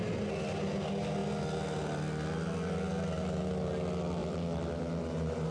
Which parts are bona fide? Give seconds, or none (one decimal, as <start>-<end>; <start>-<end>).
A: 0.0-4.2; 5.0-5.5